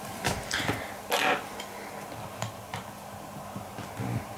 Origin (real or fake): real